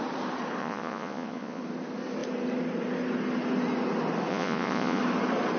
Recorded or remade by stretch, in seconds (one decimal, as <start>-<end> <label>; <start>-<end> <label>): 0.0-0.6 recorded; 0.6-1.6 remade; 1.6-4.3 recorded; 4.3-5.0 remade; 5.0-5.6 recorded